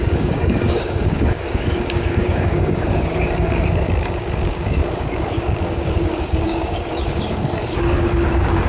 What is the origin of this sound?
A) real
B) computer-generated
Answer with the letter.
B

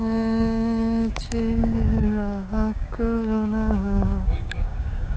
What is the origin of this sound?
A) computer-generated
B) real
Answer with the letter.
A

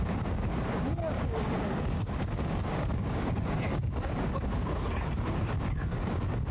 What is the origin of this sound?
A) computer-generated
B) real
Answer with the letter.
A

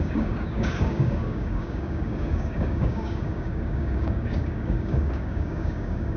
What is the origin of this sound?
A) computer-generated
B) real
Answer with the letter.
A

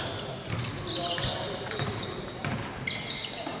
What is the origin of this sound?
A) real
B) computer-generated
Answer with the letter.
A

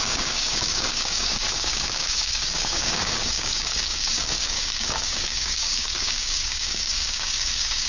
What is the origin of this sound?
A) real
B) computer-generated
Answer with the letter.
B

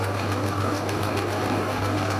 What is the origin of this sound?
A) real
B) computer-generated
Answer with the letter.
B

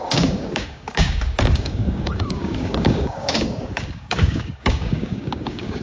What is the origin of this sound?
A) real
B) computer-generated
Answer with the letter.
B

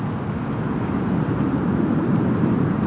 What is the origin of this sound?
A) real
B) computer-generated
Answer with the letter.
A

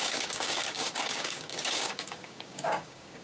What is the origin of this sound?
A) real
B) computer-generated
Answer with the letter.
B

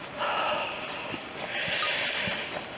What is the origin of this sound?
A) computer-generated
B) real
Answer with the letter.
B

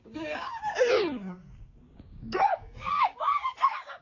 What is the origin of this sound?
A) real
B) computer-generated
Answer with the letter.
B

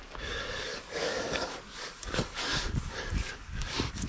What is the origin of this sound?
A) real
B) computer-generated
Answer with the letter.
B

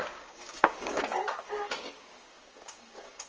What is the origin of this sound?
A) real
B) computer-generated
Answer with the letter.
B